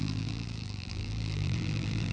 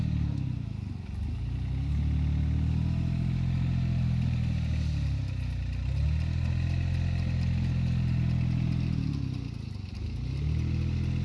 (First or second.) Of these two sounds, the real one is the second